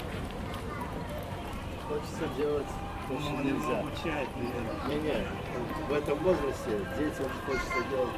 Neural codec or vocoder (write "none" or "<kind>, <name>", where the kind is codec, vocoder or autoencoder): vocoder, BigVGAN v2